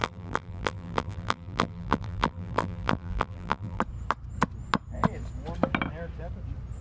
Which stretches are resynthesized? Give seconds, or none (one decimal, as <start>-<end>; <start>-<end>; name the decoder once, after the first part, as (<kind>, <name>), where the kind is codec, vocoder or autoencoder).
0.0-3.8 (vocoder, BigVGAN v2)